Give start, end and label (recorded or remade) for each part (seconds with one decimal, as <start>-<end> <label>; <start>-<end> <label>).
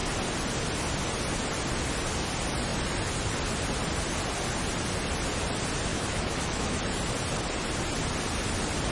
0.0-5.9 recorded; 5.9-6.8 remade; 6.8-8.9 recorded